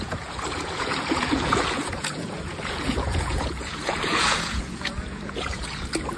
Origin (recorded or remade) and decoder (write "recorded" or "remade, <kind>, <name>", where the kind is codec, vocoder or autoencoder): remade, vocoder, Vocos